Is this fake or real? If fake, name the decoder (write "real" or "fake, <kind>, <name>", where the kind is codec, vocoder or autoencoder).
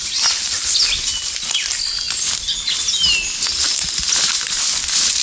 real